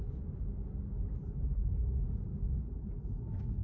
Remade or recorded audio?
recorded